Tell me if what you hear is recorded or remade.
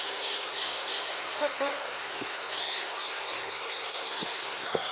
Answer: remade